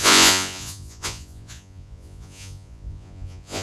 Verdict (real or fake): fake